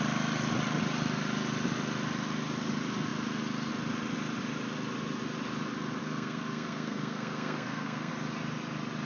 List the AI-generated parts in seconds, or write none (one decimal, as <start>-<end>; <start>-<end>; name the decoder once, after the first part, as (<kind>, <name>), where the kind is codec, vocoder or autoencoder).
6.0-8.1 (codec, SNAC)